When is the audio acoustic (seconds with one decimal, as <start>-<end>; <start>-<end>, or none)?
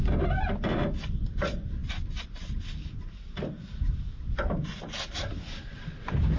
0.0-6.4